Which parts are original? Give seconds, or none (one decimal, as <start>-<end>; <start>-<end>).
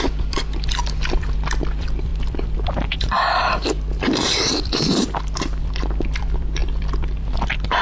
none